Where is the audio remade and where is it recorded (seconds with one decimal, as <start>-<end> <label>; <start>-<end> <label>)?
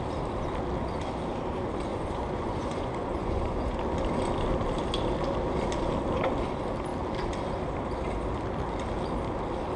0.0-1.9 recorded; 1.9-3.8 remade; 3.8-9.8 recorded